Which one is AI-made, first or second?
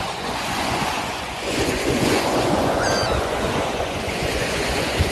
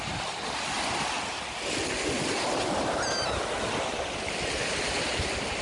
first